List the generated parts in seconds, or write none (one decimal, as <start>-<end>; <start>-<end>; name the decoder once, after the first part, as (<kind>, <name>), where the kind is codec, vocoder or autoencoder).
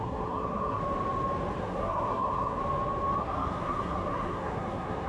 0.0-0.8 (codec, SNAC); 1.6-2.6; 3.2-5.1